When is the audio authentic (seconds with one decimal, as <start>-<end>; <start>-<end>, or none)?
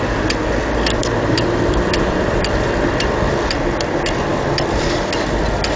0.0-1.0; 3.5-4.3; 4.9-5.8